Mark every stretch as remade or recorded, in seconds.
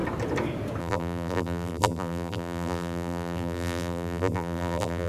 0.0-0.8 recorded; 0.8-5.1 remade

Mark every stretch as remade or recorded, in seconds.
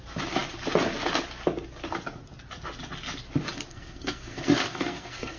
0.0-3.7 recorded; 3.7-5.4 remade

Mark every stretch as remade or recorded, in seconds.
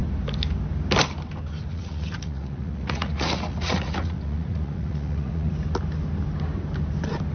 0.0-1.7 recorded; 1.7-5.5 remade; 5.5-7.3 recorded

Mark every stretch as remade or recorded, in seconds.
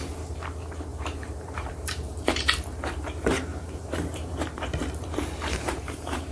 0.0-0.9 recorded; 0.9-3.0 remade; 3.0-3.5 recorded; 3.5-5.8 remade; 5.8-6.3 recorded